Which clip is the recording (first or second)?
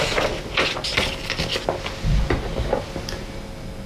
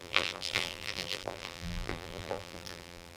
first